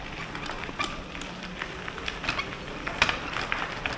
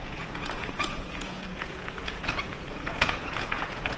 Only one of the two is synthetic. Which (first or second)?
second